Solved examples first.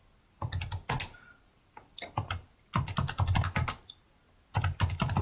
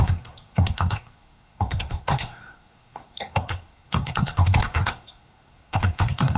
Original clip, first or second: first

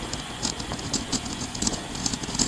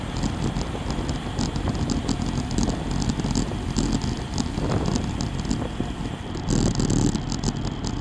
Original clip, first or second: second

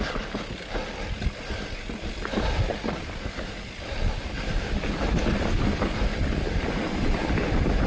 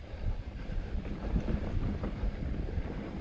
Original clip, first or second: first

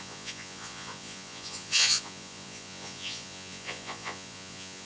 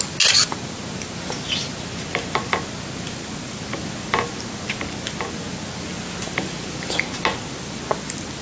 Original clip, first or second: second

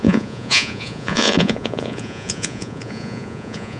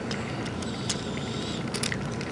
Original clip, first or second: second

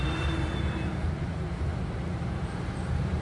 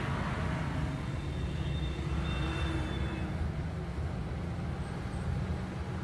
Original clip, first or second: second